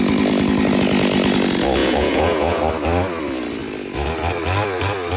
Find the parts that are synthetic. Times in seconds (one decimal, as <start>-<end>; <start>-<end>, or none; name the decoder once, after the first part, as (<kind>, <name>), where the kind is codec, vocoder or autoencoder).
1.8-2.6 (vocoder, Vocos)